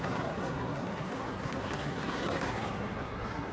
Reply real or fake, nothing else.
fake